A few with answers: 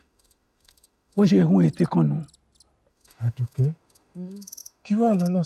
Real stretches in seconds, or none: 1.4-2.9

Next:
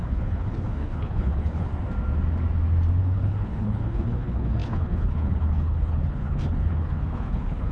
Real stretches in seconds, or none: 1.7-3.0

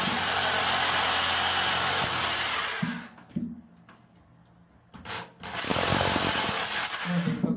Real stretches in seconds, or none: 0.0-7.6